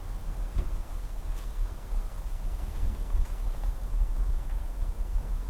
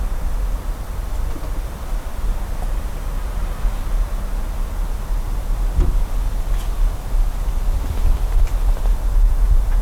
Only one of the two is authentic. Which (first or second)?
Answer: second